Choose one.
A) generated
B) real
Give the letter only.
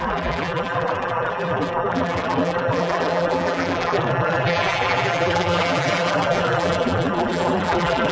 A